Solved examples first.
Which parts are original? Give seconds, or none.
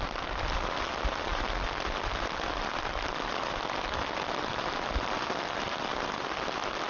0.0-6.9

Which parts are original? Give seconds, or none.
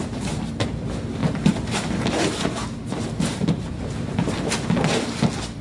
0.0-1.2; 4.3-5.6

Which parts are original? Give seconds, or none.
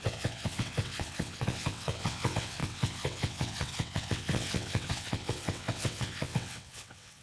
none